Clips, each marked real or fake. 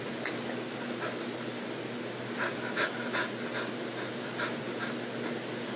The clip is real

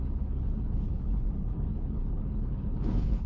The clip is fake